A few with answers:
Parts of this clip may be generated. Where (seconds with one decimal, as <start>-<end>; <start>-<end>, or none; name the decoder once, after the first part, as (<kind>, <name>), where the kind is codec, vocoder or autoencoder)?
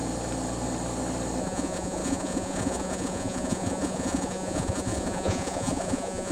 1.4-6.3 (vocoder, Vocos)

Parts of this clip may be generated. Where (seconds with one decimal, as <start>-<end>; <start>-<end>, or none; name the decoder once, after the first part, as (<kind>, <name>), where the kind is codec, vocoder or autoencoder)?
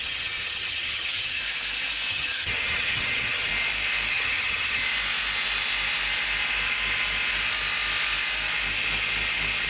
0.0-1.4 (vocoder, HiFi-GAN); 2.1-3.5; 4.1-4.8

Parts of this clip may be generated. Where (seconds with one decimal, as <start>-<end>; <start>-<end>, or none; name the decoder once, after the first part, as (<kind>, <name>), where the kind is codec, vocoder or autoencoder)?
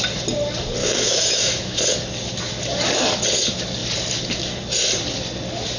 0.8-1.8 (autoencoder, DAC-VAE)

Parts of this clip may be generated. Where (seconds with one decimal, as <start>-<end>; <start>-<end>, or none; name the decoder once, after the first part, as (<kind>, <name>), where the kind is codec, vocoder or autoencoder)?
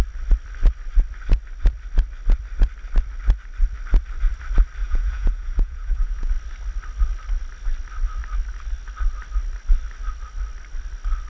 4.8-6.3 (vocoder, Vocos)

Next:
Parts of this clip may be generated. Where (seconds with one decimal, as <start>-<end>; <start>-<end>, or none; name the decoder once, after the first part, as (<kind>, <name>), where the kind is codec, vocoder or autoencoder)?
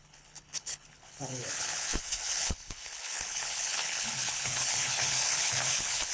0.0-6.1 (codec, HILCodec)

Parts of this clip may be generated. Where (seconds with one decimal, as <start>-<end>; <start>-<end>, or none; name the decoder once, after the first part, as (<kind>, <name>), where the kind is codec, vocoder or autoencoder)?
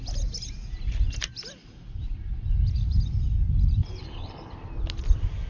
4.0-4.5 (codec, HILCodec)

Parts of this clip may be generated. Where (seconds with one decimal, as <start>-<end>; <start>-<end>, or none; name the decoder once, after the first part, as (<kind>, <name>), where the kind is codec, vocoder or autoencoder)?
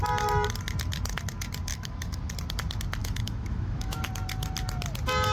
1.7-2.3 (autoencoder, DAC-VAE); 3.0-4.1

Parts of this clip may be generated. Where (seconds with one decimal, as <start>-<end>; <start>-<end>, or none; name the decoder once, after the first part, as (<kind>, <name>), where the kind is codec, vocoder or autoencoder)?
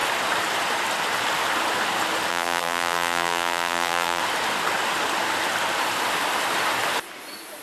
2.3-4.2 (vocoder, BigVGAN v2)